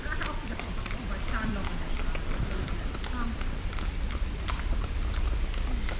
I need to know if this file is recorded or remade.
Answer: recorded